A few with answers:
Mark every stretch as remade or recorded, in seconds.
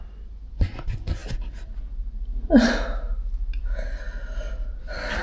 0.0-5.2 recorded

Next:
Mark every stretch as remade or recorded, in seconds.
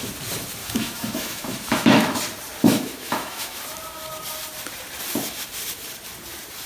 0.0-0.6 recorded; 0.6-2.2 remade; 2.2-2.6 recorded; 2.6-3.6 remade; 3.6-6.7 recorded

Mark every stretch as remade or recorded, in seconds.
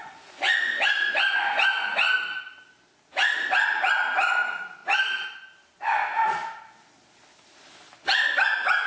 0.0-1.9 remade; 1.9-8.9 recorded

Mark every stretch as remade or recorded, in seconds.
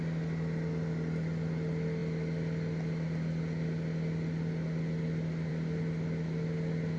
0.0-7.0 recorded